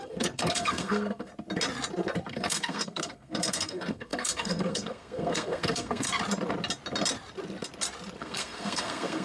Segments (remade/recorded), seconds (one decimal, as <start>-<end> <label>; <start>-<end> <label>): 0.0-1.3 remade; 1.3-2.3 recorded; 2.3-6.1 remade; 6.1-8.2 recorded; 8.2-9.2 remade